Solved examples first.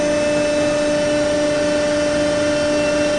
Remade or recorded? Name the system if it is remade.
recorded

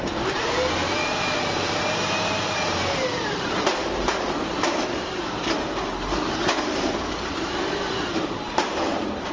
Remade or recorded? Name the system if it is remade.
remade, vocoder, BigVGAN v2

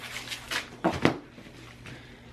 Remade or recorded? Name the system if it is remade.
remade, vocoder, BigVGAN v2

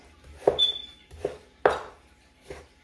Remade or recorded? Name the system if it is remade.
remade, vocoder, BigVGAN v2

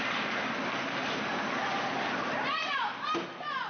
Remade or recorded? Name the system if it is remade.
recorded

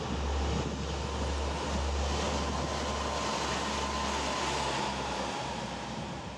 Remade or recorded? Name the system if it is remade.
recorded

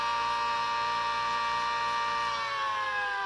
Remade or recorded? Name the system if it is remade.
remade, vocoder, BigVGAN v2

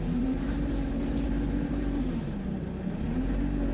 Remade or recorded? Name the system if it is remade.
remade, vocoder, BigVGAN v2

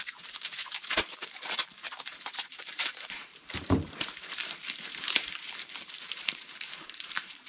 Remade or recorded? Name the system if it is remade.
remade, vocoder, BigVGAN v2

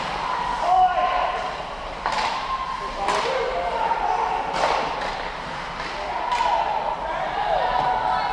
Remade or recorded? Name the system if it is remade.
remade, vocoder, BigVGAN v2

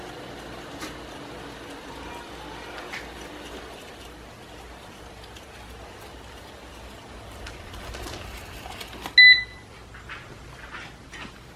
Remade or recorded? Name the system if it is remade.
recorded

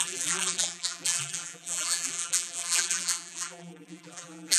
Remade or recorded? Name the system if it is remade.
remade, vocoder, BigVGAN v2